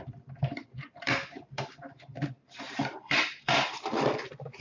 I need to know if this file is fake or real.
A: fake